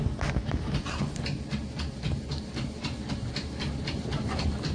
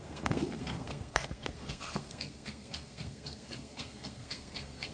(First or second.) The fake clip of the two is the second